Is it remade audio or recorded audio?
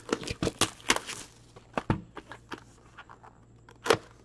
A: recorded